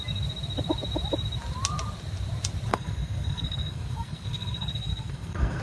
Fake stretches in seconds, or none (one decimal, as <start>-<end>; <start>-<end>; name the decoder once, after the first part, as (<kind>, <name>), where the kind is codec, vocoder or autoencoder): 2.7-5.6 (codec, SNAC)